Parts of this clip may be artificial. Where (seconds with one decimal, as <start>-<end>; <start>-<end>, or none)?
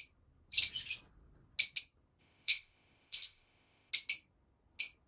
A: 2.2-3.9